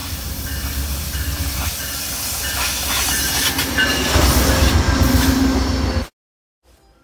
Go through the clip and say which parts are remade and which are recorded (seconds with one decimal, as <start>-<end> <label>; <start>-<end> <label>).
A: 0.0-2.4 remade; 2.4-7.0 recorded